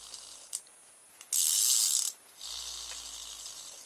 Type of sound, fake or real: real